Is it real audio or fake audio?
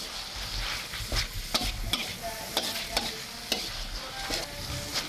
real